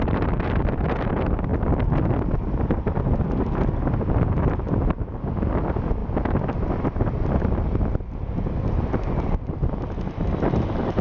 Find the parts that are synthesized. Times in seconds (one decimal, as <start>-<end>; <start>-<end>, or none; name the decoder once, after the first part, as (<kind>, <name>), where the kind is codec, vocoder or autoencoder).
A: none